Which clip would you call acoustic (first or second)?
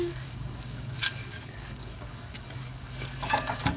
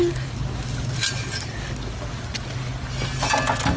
second